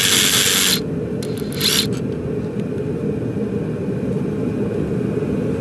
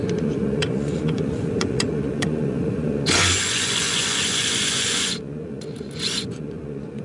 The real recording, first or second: first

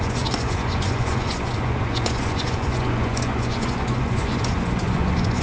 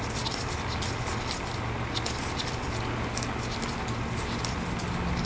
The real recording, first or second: second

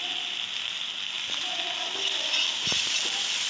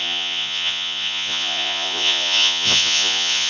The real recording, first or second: first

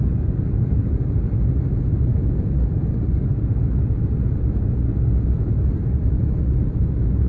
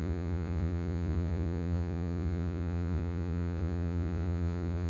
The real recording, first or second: first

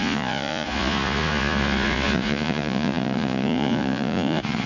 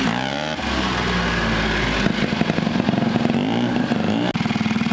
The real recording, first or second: second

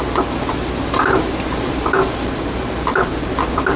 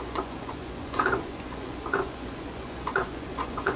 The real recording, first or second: first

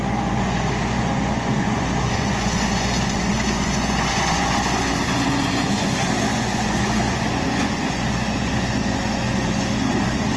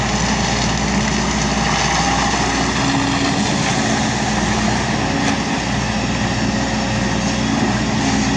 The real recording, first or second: second